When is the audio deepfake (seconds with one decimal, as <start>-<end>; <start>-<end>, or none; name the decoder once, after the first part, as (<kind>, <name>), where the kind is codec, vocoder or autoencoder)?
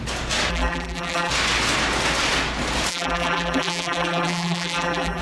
0.5-1.3 (vocoder, BigVGAN v2); 2.9-5.2